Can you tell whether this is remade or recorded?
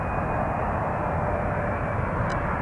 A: recorded